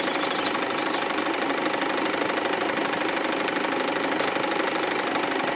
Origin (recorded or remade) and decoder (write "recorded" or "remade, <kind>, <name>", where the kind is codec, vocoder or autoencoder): recorded